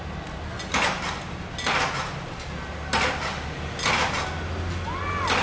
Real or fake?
real